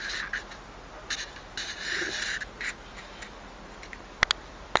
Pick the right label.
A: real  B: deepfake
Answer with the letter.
A